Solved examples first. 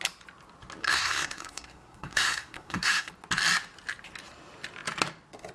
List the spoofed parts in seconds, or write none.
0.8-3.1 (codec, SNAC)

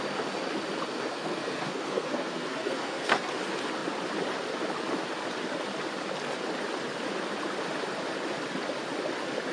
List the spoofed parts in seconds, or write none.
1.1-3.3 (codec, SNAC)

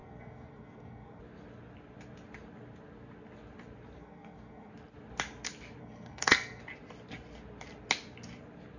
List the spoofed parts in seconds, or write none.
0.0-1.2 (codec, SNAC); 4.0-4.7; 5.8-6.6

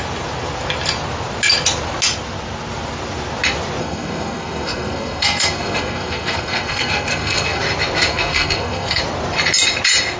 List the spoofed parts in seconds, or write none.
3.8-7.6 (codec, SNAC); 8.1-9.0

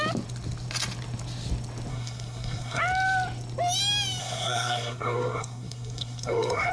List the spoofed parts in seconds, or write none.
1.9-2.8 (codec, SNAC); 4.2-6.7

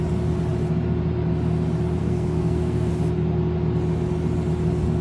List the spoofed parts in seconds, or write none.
2.0-2.9 (codec, SNAC)